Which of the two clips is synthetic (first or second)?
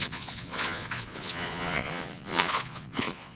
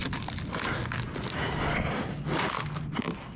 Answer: first